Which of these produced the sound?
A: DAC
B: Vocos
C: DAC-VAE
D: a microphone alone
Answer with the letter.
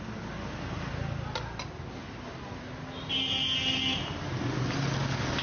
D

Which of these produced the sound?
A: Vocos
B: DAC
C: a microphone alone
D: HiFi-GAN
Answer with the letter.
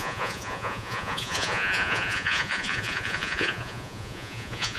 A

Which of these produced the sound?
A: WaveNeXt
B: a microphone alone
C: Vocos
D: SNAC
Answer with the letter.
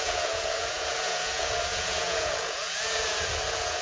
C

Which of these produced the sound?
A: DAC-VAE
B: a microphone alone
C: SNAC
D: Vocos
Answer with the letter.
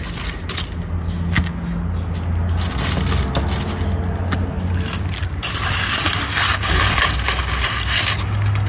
B